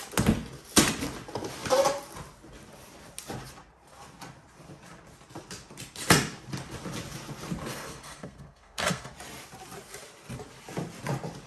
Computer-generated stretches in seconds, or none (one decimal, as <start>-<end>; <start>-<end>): 7.7-9.1